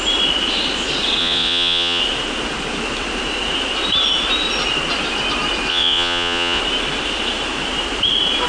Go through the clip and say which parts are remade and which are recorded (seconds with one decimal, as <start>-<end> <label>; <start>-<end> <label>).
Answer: 0.0-1.2 recorded; 1.2-2.0 remade; 2.0-5.7 recorded; 5.7-6.6 remade; 6.6-8.5 recorded